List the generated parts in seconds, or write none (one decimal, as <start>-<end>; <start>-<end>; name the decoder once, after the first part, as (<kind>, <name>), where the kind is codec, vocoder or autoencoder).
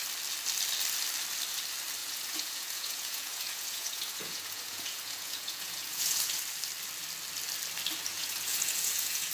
2.0-6.4 (vocoder, Vocos); 8.1-9.3